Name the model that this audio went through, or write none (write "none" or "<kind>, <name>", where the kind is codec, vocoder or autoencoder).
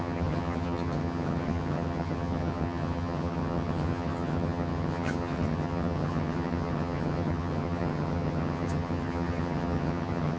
vocoder, HiFi-GAN